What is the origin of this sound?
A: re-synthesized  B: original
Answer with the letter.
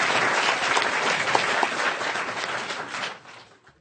B